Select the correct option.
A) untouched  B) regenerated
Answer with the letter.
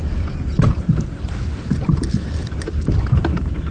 B